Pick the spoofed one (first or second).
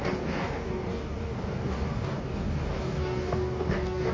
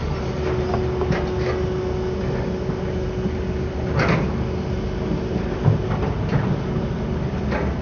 first